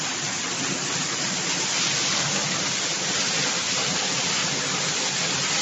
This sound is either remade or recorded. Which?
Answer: recorded